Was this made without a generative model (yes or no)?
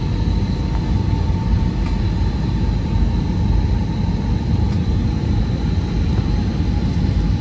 yes